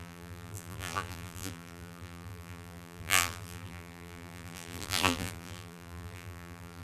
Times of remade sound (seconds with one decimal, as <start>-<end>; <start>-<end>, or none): 0.0-6.8